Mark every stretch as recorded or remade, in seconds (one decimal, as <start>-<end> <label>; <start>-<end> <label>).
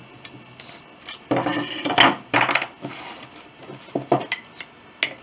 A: 0.0-5.2 recorded